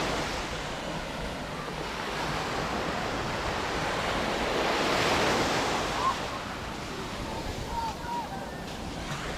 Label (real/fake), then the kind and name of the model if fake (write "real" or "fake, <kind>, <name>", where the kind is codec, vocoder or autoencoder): real